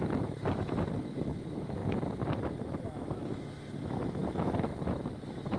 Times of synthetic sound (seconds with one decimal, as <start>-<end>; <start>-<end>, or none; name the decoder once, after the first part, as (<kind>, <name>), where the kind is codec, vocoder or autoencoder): 0.0-5.6 (autoencoder, DAC-VAE)